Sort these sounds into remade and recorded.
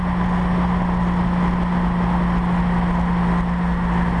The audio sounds recorded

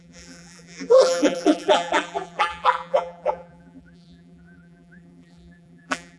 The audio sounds remade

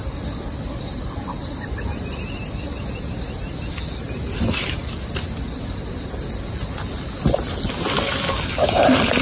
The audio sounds recorded